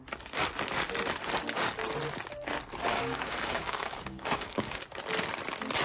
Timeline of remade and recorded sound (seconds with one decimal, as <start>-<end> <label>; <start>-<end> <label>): 0.0-2.9 recorded; 2.9-4.8 remade; 4.8-5.8 recorded